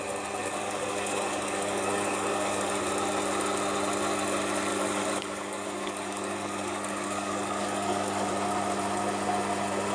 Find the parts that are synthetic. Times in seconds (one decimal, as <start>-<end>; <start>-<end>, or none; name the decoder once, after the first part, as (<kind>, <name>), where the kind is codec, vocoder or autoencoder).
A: 0.4-2.7 (codec, DAC); 4.7-8.3